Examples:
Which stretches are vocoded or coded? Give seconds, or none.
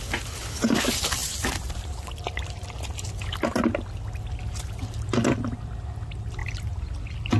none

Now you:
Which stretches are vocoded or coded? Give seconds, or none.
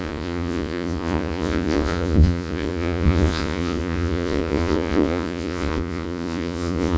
0.0-7.0 (vocoder, Vocos)